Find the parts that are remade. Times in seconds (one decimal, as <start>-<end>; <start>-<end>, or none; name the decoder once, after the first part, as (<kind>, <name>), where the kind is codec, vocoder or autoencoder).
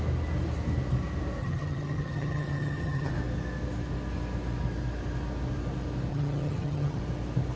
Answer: 1.4-3.1 (vocoder, HiFi-GAN); 6.1-7.0